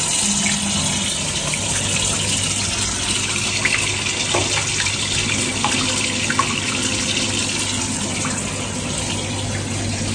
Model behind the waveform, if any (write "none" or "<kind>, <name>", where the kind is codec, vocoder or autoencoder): none